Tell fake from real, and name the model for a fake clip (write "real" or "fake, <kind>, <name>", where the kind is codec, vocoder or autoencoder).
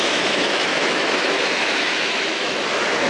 fake, autoencoder, DAC-VAE